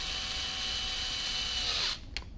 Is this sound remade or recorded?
recorded